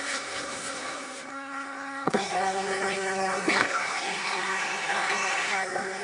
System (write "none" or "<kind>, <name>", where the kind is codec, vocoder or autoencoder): codec, SNAC